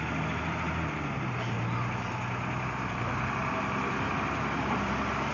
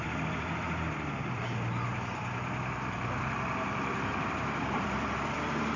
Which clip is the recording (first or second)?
first